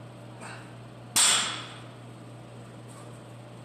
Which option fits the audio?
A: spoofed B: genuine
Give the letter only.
B